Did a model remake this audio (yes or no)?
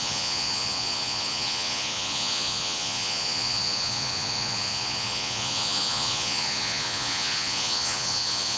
yes